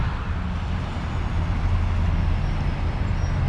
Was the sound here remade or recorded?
recorded